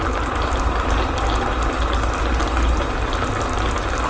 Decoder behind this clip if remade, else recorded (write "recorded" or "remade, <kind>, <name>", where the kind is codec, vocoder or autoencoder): recorded